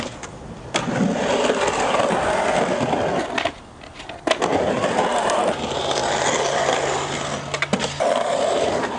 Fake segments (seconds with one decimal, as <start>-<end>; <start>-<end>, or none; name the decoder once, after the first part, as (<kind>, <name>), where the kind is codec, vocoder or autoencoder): none

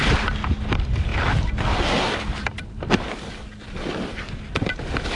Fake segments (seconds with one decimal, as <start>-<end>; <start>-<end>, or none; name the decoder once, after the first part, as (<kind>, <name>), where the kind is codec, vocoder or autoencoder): none

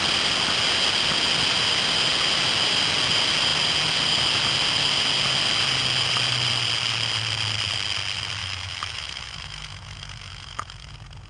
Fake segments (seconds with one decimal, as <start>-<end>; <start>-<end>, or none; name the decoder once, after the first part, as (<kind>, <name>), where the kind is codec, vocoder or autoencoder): 8.4-10.9 (autoencoder, DAC-VAE)